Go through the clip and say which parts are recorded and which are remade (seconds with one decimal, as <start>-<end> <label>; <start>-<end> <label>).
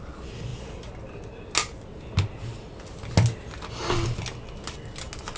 0.0-5.4 recorded